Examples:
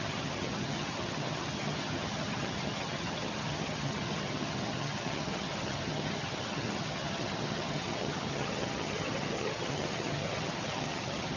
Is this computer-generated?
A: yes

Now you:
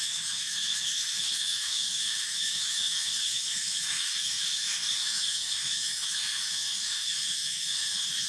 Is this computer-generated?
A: yes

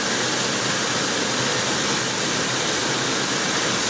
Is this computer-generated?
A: no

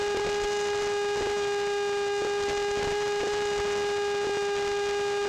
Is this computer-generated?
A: no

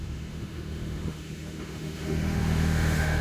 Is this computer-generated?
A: yes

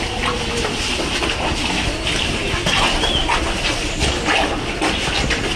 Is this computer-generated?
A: no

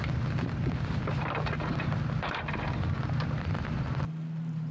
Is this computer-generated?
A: yes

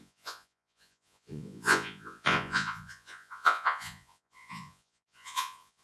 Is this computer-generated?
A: yes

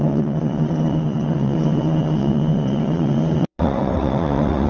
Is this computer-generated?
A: yes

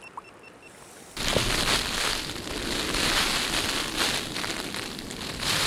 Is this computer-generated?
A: no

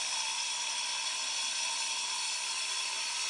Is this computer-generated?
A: no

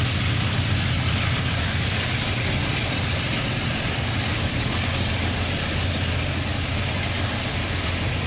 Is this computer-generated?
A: no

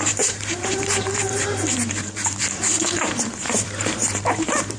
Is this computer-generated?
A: yes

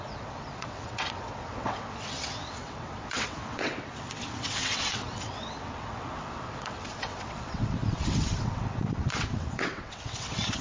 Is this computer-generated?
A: yes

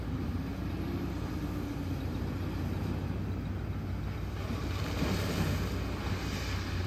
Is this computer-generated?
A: no